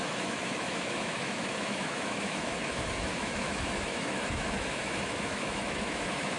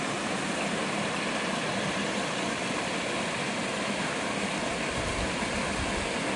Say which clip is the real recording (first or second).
second